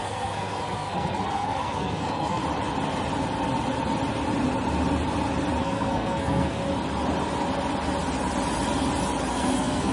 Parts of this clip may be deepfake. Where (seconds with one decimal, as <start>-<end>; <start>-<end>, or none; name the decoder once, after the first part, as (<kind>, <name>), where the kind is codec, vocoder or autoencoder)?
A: 0.0-2.4 (codec, SNAC); 5.6-6.6; 9.3-9.9